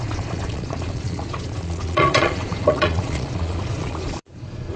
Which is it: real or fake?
fake